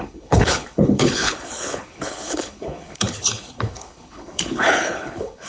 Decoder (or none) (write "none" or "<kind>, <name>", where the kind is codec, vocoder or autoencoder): codec, HILCodec